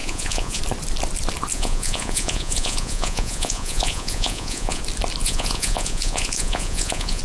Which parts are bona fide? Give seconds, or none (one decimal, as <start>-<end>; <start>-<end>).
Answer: 0.6-1.5; 4.8-5.2